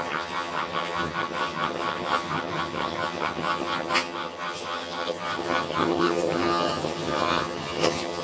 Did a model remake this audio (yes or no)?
yes